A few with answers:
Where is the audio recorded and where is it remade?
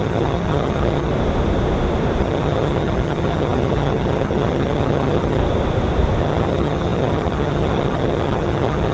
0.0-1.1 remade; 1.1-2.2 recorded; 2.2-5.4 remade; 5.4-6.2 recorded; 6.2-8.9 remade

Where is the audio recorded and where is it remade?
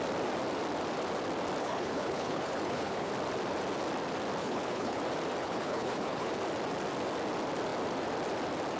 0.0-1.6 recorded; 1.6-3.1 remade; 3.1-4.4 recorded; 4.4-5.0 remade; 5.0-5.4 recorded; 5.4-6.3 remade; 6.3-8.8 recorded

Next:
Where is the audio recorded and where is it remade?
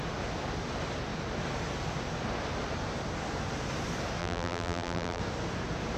0.0-4.2 recorded; 4.2-5.2 remade; 5.2-6.0 recorded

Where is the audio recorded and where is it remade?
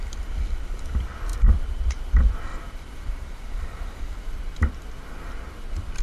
0.0-1.3 recorded; 1.3-2.0 remade; 2.0-2.5 recorded; 2.5-4.0 remade; 4.0-6.0 recorded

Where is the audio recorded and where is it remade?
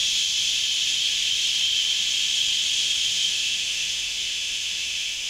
0.0-3.1 recorded; 3.1-5.3 remade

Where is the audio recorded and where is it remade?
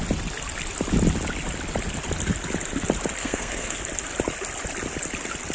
0.0-3.2 recorded; 3.2-3.8 remade; 3.8-5.5 recorded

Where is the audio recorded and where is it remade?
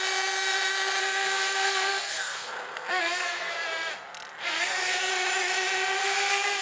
0.0-1.0 recorded; 1.0-3.5 remade; 3.5-4.4 recorded; 4.4-5.1 remade; 5.1-6.0 recorded; 6.0-6.6 remade